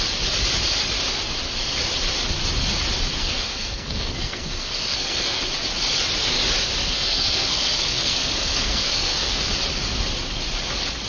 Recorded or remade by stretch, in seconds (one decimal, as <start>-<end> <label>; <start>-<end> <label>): 0.0-3.2 recorded; 3.2-5.4 remade; 5.4-6.8 recorded; 6.8-9.5 remade; 9.5-11.1 recorded